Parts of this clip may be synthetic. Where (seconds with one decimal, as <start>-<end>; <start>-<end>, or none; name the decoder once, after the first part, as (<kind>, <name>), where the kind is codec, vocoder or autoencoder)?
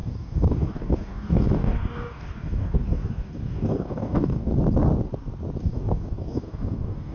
0.0-4.5 (codec, DAC); 5.6-7.1